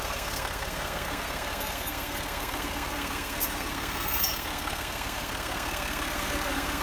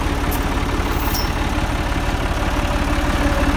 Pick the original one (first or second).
second